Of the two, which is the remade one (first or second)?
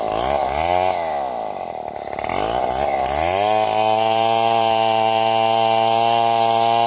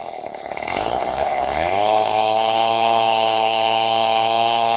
second